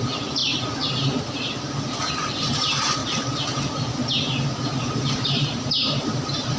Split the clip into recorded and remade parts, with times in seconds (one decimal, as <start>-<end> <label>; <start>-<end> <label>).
0.0-0.4 remade; 0.4-2.1 recorded; 2.1-3.0 remade; 3.0-5.1 recorded; 5.1-6.6 remade